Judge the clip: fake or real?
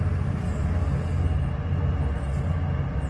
real